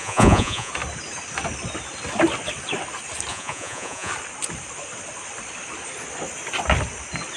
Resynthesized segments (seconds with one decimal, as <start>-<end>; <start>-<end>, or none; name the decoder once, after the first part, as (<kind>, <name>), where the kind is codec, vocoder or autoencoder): 0.0-0.7 (vocoder, Vocos); 3.3-4.1